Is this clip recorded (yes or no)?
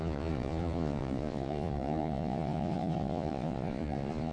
no